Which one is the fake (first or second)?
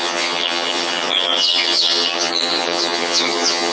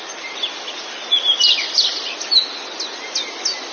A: first